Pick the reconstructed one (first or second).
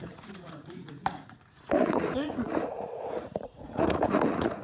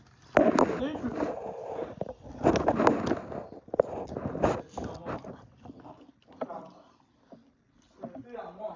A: first